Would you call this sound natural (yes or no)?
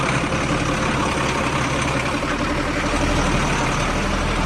yes